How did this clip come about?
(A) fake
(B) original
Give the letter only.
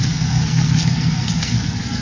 A